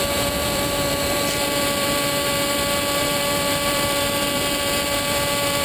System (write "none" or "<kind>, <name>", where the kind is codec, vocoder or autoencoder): vocoder, BigVGAN v2